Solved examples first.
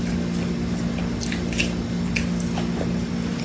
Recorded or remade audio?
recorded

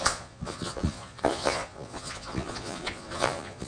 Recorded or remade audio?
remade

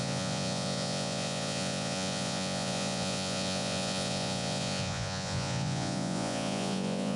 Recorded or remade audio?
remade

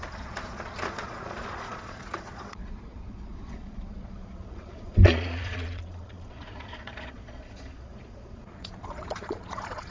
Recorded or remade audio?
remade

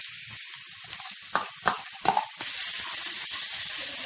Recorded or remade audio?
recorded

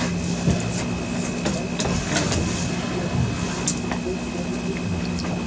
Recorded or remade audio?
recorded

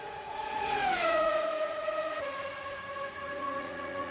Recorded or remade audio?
remade